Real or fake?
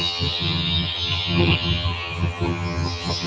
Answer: fake